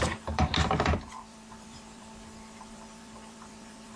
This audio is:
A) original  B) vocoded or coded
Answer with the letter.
B